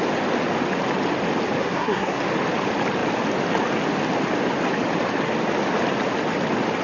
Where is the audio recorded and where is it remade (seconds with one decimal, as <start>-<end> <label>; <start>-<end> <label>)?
0.0-1.6 recorded; 1.6-2.2 remade; 2.2-6.8 recorded